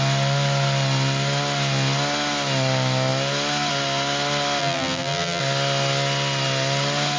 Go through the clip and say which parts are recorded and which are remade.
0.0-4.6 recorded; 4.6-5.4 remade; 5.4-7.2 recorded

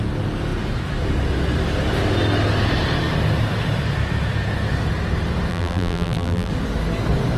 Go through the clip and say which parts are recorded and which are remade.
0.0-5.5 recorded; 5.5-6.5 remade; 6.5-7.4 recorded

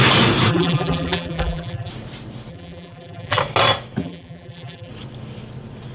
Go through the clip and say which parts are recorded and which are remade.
0.0-0.5 recorded; 0.5-1.9 remade; 1.9-2.5 recorded; 2.5-3.4 remade; 3.4-4.0 recorded; 4.0-4.9 remade; 4.9-5.9 recorded

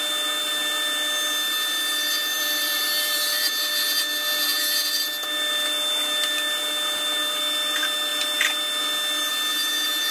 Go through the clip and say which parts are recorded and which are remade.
0.0-2.3 recorded; 2.3-3.5 remade; 3.5-10.1 recorded